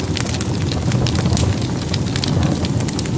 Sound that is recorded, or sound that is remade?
recorded